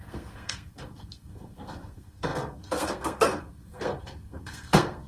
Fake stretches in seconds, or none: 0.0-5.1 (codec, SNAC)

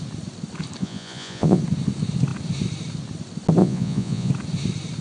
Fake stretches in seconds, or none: 0.8-1.6 (vocoder, Vocos); 3.6-4.3

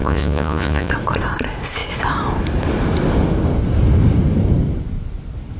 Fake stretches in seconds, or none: 0.0-0.9 (vocoder, Vocos)

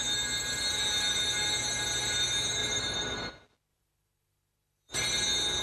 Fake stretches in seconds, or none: 2.6-3.3 (vocoder, BigVGAN v2); 3.7-5.0